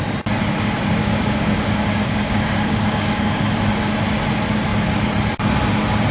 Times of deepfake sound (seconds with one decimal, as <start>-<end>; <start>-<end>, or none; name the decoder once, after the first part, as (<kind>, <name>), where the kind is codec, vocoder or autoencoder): 1.0-3.9 (codec, DAC)